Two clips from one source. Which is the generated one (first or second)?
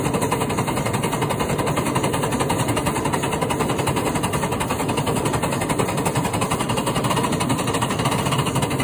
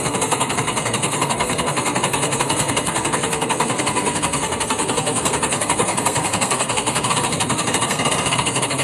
second